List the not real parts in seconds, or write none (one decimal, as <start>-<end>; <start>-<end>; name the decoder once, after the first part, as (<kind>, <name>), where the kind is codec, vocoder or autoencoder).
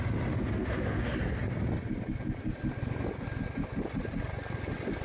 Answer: 0.6-1.2 (codec, DAC)